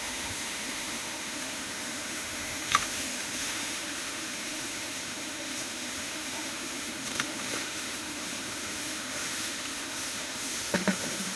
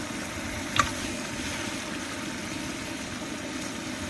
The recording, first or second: second